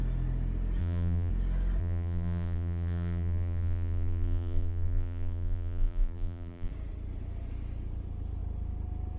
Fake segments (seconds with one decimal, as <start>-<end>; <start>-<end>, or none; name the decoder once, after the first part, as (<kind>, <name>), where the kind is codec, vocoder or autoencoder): 0.8-1.3 (vocoder, BigVGAN v2); 1.8-6.7